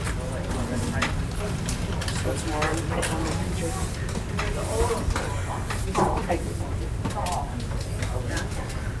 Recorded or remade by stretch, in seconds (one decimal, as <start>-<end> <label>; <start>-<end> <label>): 0.0-9.0 recorded